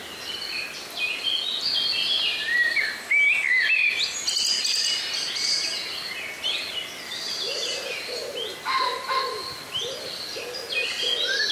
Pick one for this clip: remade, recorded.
recorded